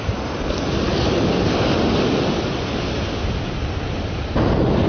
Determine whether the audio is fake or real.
real